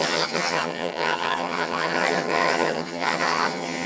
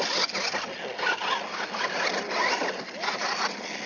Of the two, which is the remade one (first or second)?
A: first